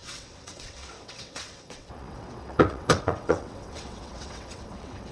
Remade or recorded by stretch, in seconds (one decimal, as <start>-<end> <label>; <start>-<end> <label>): 0.0-5.1 remade